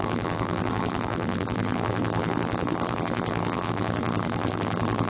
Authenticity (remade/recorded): remade